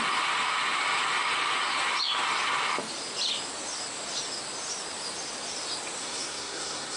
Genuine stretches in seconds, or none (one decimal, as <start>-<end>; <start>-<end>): 0.0-6.0